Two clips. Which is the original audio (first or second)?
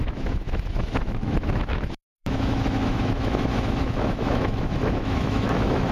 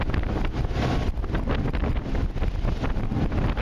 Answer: second